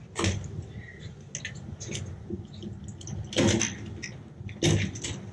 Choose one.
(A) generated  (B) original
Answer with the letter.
B